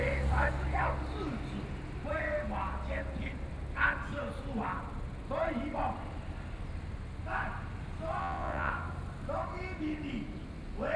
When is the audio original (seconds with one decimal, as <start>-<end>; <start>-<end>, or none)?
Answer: 0.0-8.2; 8.7-11.0